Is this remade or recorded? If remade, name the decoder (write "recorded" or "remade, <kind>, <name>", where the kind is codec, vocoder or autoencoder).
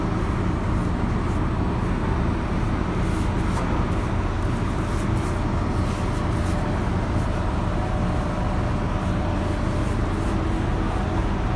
recorded